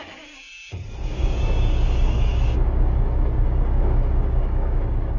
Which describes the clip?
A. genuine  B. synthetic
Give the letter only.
B